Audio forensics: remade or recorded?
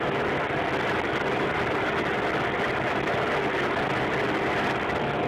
recorded